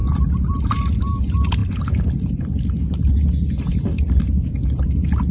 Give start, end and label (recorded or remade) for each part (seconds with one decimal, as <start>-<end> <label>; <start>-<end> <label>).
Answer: 0.0-5.3 recorded